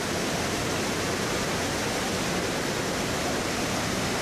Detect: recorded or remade recorded